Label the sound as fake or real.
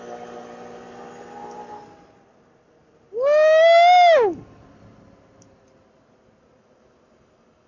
real